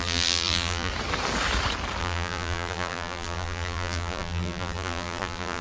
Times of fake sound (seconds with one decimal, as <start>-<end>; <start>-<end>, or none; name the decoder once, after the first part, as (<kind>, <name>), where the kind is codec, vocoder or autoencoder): 0.0-0.9 (vocoder, BigVGAN v2); 2.0-5.6